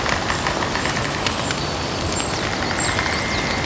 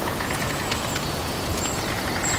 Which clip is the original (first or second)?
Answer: first